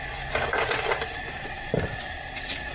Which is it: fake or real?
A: real